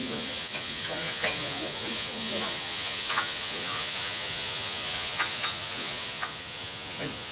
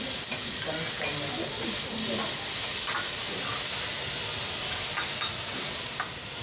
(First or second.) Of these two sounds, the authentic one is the second